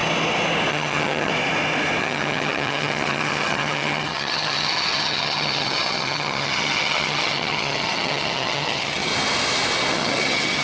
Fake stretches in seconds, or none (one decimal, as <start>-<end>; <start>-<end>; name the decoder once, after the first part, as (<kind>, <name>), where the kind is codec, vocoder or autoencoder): 0.7-1.3 (vocoder, HiFi-GAN); 2.0-9.1; 9.9-10.6